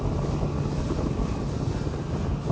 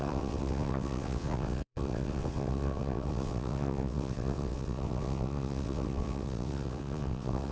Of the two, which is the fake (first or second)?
second